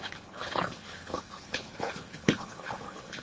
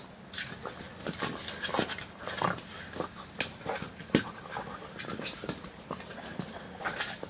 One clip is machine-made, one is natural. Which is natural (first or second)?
second